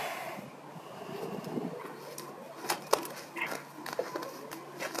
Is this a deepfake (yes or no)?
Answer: no